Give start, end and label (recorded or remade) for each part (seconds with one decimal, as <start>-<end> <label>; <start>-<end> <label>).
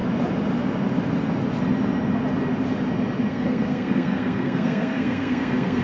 0.0-3.3 recorded; 3.3-5.8 remade